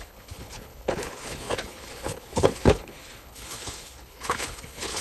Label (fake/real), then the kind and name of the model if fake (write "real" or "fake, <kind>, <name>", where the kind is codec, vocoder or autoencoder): fake, codec, HILCodec